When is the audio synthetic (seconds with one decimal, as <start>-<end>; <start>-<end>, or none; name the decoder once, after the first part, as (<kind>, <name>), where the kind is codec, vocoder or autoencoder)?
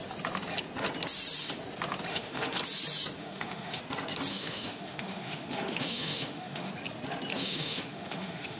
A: 2.1-2.6 (autoencoder, DAC-VAE); 3.2-3.8; 4.3-6.7; 7.3-8.6